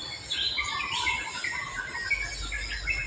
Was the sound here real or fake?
real